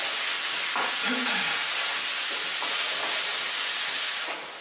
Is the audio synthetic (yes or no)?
no